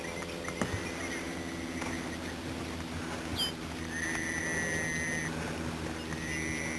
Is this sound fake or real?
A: real